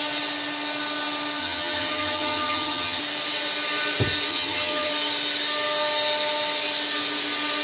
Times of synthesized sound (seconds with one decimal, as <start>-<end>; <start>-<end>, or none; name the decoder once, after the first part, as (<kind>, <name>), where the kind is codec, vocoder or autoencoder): 1.4-3.0 (vocoder, HiFi-GAN); 4.3-4.9